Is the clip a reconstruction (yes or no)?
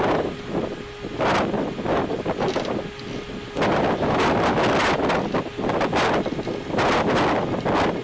no